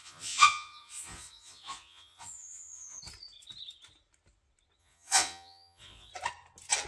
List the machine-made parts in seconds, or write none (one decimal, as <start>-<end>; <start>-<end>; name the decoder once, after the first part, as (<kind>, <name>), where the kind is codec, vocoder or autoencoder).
0.0-3.0 (vocoder, Vocos); 4.8-6.1